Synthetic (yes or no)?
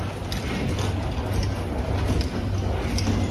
no